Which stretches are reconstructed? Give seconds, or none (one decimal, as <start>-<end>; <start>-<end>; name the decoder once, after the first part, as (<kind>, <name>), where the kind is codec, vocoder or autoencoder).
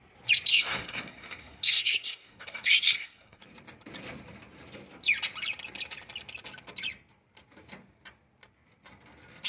0.5-3.4 (codec, SNAC)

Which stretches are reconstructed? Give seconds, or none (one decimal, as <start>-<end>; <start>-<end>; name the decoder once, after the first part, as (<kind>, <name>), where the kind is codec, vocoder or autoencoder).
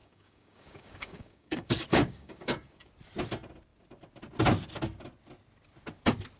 0.0-2.9 (codec, DAC)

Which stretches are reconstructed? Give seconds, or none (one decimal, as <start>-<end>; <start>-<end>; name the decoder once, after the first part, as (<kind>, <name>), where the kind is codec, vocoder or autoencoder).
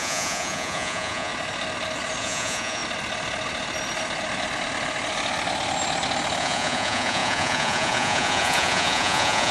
0.0-1.3 (vocoder, Vocos); 2.2-2.8; 6.4-9.5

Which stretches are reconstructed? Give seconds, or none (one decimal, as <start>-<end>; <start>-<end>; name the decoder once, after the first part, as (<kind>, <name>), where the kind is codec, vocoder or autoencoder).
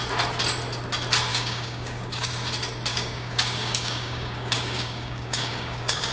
1.3-2.3 (codec, DAC); 2.9-6.1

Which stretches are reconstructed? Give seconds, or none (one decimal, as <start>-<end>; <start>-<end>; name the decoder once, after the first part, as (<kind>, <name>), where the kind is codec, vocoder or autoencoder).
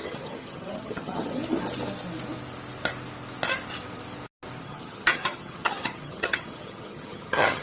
0.0-1.4 (vocoder, HiFi-GAN); 4.6-7.6